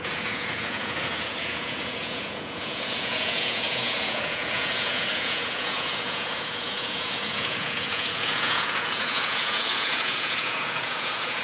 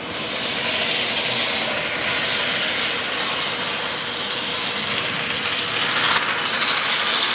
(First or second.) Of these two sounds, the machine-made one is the first